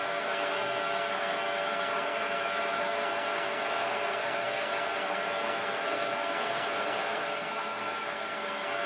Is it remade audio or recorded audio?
remade